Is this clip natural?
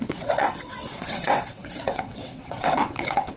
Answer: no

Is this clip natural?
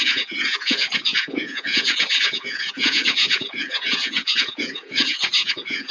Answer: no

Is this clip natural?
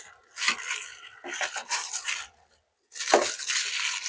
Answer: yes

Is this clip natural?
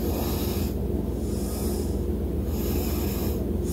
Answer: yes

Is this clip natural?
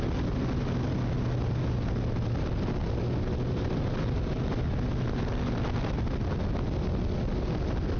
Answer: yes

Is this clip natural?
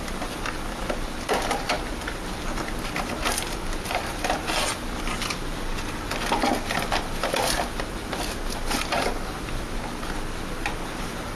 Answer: yes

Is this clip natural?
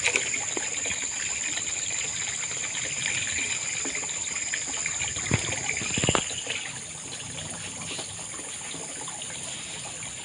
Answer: yes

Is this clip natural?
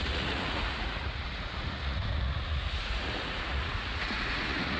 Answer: no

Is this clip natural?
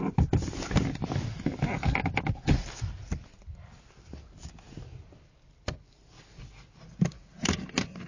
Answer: yes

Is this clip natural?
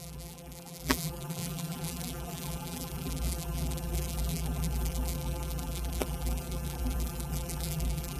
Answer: no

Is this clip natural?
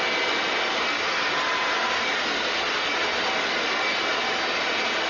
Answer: yes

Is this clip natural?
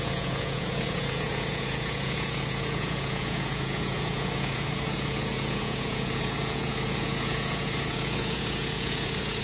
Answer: no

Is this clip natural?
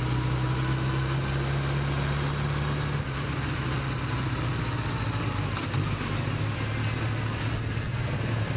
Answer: yes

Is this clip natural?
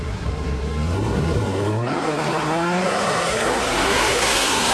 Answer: no